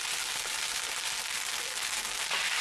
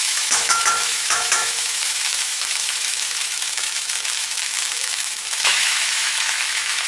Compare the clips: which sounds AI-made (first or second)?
second